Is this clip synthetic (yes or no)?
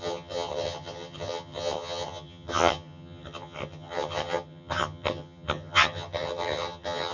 yes